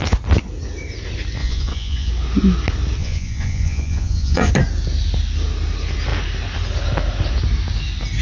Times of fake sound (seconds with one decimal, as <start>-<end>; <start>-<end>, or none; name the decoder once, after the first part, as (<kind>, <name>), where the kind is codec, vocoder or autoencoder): 1.4-2.1 (vocoder, Vocos); 3.0-4.5